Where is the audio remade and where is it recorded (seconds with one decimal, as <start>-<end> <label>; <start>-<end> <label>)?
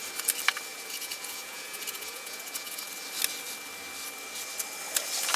0.0-0.7 recorded; 0.7-2.8 remade; 2.8-5.4 recorded